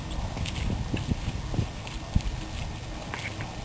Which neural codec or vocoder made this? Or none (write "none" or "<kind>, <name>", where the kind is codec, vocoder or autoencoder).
none